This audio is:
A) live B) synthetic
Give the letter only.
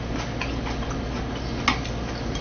A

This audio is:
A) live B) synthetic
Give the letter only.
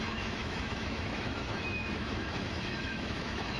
B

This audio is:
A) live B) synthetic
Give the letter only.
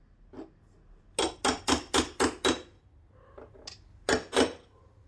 A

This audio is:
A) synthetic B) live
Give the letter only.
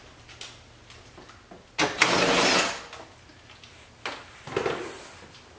B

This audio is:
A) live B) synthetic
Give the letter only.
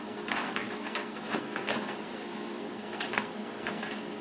B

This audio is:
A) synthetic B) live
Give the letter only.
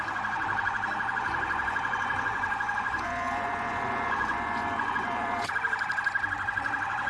A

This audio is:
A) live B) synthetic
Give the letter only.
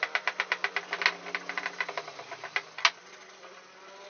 A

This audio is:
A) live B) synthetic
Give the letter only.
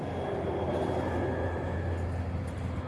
A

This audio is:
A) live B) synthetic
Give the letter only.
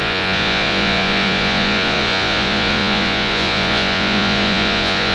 B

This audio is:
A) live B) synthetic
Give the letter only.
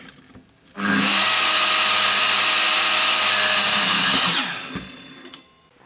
A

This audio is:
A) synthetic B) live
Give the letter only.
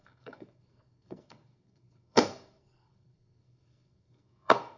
A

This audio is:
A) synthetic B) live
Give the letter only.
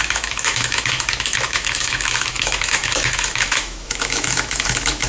A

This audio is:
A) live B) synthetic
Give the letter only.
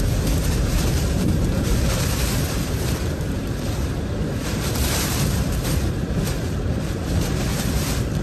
B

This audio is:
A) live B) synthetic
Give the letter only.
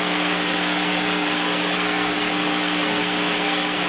B